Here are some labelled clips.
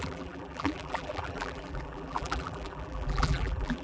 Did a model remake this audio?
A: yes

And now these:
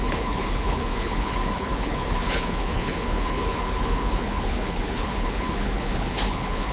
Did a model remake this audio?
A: yes